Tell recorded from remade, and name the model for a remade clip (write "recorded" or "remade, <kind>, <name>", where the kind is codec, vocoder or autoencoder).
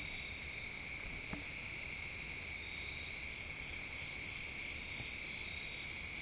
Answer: recorded